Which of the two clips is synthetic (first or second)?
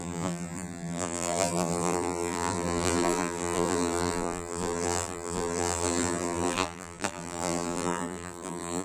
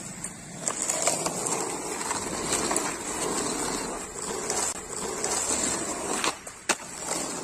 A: first